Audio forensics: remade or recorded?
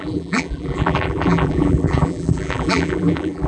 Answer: remade